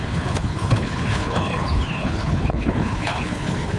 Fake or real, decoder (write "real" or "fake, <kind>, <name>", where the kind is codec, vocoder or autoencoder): fake, codec, HILCodec